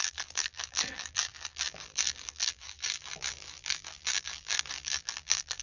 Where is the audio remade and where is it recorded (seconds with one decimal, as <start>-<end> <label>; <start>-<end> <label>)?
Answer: 0.0-5.6 remade